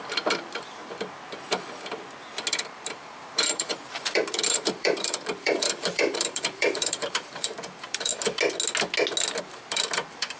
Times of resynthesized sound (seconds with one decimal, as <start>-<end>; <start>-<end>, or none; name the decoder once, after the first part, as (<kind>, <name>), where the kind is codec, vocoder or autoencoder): 0.0-0.8 (vocoder, BigVGAN v2); 2.5-8.1; 9.4-10.4